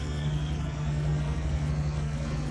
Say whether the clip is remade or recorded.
remade